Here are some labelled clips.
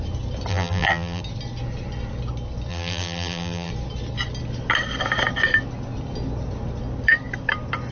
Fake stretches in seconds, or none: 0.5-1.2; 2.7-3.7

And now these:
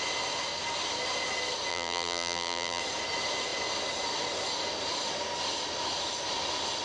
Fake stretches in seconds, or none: 1.7-2.8

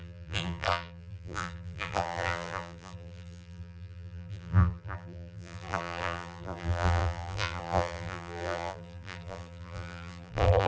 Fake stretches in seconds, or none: 0.0-10.7

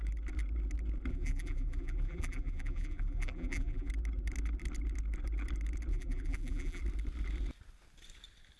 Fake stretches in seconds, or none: 1.1-3.9; 5.9-6.8